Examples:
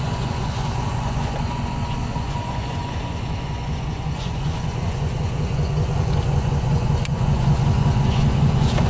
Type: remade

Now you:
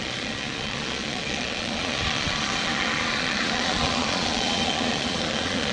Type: remade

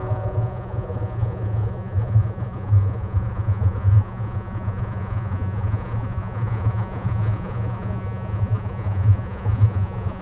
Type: remade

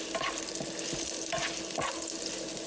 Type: recorded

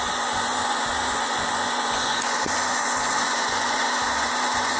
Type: remade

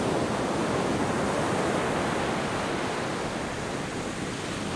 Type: recorded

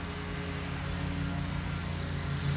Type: recorded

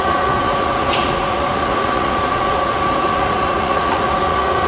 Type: remade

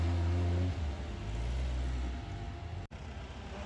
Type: recorded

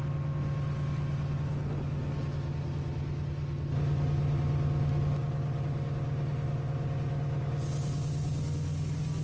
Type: recorded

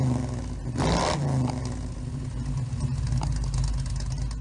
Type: recorded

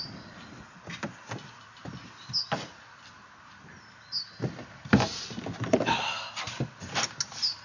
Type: recorded